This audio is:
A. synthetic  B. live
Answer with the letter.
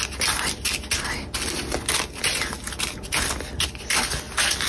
B